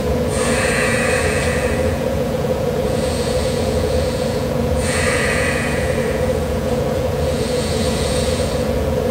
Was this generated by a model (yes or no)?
yes